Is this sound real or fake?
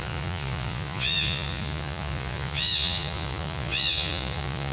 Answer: fake